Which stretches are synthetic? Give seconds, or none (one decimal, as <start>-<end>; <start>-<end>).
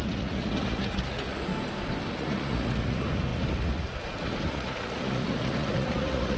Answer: 0.0-1.5; 2.1-6.4